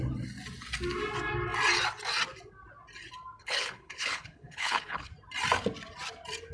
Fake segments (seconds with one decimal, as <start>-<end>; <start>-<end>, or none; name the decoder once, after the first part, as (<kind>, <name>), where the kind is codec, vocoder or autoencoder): 3.4-5.1 (codec, HILCodec)